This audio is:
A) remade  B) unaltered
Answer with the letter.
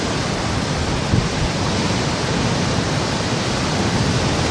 B